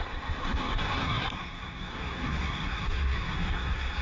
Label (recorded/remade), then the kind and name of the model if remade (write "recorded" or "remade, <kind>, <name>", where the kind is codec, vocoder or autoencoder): remade, codec, SNAC